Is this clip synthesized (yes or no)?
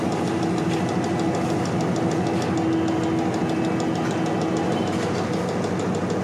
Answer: no